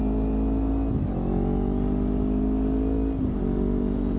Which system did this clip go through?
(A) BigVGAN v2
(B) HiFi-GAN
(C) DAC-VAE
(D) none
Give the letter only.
D